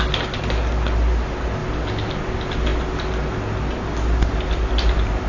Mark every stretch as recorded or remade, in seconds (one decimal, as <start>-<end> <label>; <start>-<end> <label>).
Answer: 0.0-5.3 recorded